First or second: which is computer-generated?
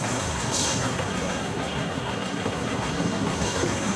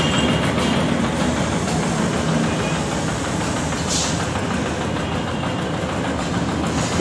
first